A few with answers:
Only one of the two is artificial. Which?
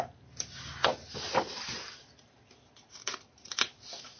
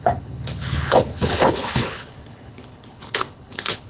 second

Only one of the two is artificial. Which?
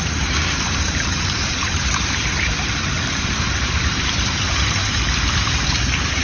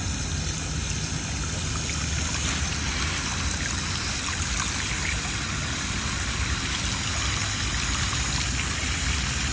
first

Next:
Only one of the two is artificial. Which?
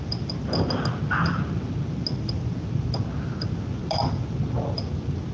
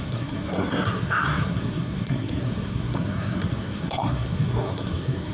second